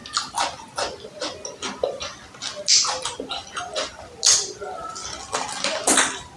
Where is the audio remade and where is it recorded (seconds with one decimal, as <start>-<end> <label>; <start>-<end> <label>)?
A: 0.0-6.4 recorded